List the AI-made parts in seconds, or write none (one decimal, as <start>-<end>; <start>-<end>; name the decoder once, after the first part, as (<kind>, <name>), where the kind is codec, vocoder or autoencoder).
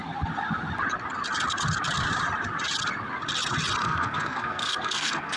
3.8-5.4 (codec, SNAC)